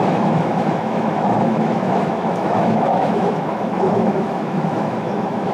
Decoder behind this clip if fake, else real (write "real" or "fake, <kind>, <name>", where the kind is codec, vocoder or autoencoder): fake, autoencoder, DAC-VAE